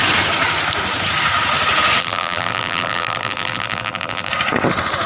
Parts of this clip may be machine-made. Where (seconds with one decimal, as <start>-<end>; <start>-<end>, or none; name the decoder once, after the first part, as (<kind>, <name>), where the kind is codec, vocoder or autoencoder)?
2.0-4.3 (vocoder, BigVGAN v2)